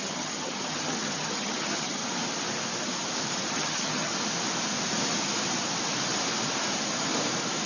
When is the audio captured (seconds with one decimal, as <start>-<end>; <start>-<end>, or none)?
2.0-3.5; 4.1-7.7